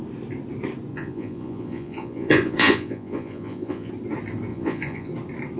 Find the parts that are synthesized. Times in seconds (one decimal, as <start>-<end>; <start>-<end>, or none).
0.9-3.9; 4.5-5.1